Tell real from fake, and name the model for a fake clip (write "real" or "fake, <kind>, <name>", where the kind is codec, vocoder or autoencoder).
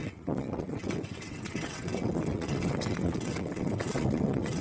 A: fake, vocoder, WaveNeXt